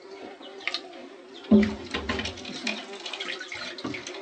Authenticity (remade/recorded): recorded